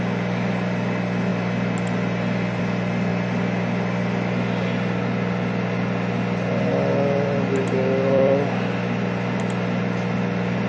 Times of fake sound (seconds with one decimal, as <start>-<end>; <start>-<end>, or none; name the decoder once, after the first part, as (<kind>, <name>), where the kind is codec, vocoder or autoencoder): 0.0-1.3 (vocoder, BigVGAN v2); 2.6-10.7